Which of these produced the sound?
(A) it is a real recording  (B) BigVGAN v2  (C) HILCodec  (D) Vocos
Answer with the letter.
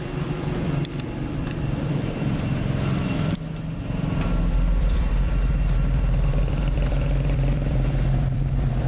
B